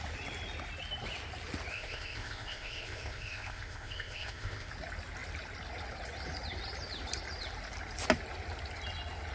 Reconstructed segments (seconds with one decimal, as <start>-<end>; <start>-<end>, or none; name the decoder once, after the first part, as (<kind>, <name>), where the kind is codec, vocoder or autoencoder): 1.7-4.7 (codec, ZipCodec)